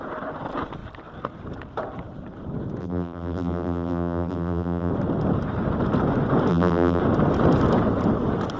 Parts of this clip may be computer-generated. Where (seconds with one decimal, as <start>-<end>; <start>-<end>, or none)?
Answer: 2.8-4.9; 6.5-7.0